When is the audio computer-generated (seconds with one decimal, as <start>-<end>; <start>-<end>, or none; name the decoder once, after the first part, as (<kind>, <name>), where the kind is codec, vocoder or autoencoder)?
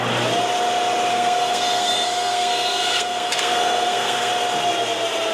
1.1-4.3 (codec, SNAC)